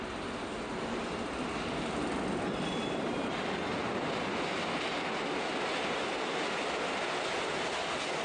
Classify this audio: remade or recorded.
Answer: recorded